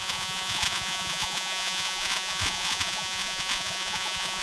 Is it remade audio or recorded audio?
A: remade